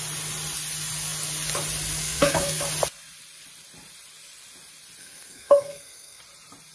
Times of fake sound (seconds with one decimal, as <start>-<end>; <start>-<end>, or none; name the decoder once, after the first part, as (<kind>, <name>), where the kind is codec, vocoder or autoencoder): 2.0-2.6 (codec, SNAC); 5.0-6.2